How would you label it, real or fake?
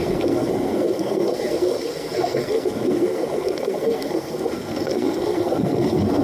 fake